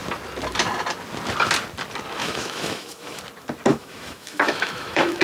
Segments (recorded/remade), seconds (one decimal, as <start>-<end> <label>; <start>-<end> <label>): 0.0-2.2 recorded; 2.2-3.2 remade; 3.2-3.7 recorded; 3.7-5.2 remade